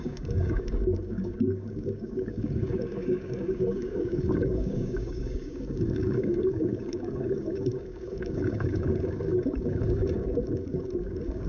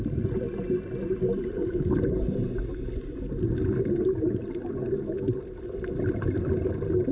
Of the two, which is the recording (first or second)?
second